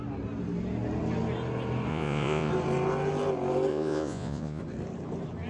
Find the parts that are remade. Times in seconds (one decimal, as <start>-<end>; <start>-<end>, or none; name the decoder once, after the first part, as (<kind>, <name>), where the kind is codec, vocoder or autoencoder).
1.9-2.5 (vocoder, Vocos); 3.7-4.6